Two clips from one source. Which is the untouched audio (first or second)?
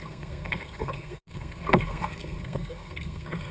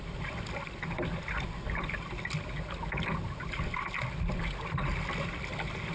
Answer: second